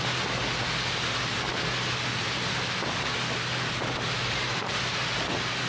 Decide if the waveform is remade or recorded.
recorded